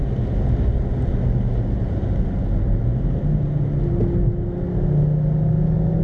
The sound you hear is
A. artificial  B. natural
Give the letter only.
B